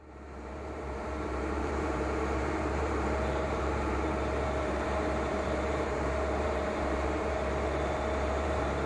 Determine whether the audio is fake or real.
fake